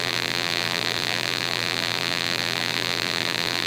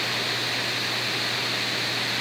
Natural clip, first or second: second